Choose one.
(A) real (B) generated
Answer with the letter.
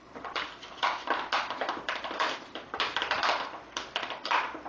B